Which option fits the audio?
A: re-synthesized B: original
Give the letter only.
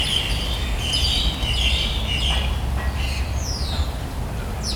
B